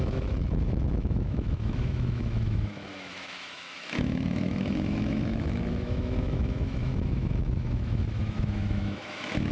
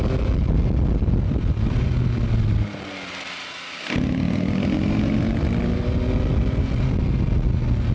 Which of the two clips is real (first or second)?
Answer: second